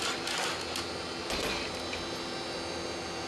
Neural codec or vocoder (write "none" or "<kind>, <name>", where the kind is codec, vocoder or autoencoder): none